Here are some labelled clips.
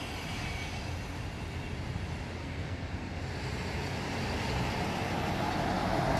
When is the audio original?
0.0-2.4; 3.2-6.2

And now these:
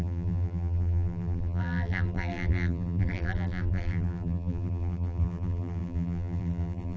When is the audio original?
none

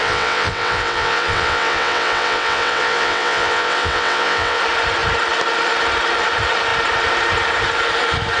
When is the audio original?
4.6-8.4

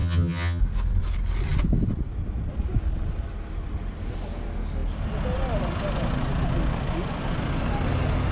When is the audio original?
0.6-8.3

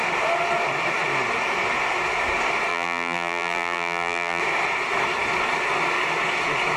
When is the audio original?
0.0-2.7; 4.4-6.8